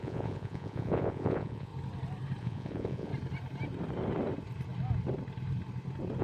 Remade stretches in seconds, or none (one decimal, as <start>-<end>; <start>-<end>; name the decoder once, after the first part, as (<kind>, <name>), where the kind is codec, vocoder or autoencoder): 0.0-1.7 (vocoder, Vocos); 2.4-3.1